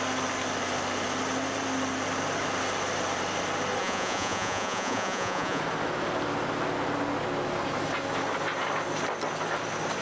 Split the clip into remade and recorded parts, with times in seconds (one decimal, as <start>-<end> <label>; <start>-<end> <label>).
0.0-3.8 recorded; 3.8-5.6 remade; 5.6-10.0 recorded